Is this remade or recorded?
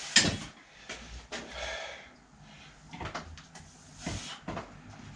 recorded